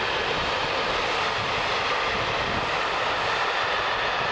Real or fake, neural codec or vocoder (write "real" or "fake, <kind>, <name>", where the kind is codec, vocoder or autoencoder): real